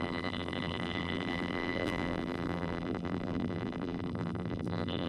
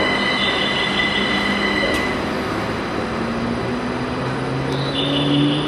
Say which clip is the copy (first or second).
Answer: first